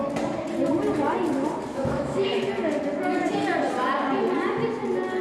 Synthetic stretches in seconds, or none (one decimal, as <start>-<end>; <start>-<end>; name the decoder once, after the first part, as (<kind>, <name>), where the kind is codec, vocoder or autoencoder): 1.7-2.5 (autoencoder, DAC-VAE)